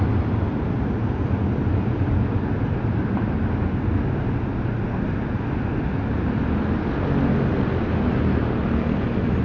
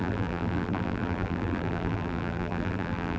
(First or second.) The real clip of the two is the first